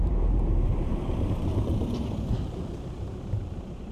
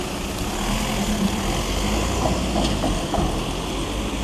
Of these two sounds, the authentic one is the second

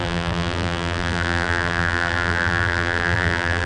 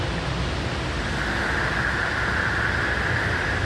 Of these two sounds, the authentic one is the second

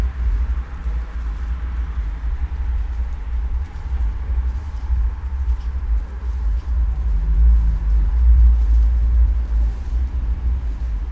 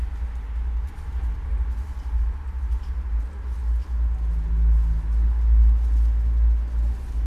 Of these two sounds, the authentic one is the second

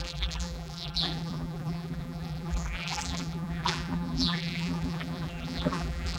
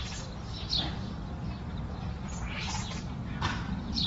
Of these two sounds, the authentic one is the second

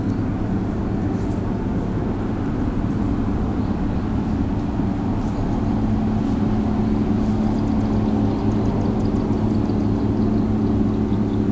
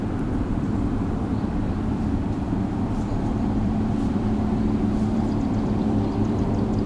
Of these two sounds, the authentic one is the first